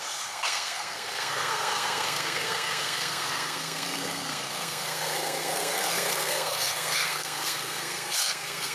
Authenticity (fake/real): fake